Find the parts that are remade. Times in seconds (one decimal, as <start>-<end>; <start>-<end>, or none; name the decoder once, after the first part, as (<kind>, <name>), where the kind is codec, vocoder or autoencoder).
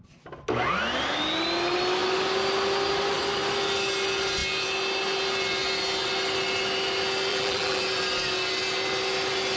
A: 7.3-7.8 (vocoder, BigVGAN v2)